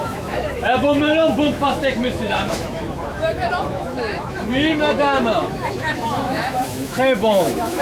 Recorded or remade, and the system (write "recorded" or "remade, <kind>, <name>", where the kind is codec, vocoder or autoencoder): remade, autoencoder, DAC-VAE